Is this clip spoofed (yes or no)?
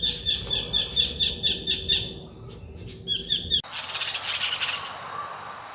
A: no